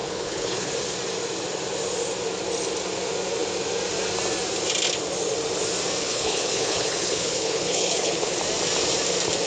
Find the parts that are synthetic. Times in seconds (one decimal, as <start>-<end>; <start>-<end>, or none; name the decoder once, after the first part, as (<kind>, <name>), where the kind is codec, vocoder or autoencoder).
0.0-0.7 (codec, HILCodec); 6.0-8.4

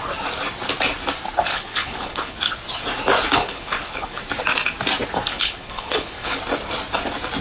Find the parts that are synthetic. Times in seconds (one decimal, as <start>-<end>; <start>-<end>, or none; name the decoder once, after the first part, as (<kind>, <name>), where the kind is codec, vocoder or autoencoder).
1.5-2.4 (codec, HILCodec); 3.4-4.2; 5.3-6.4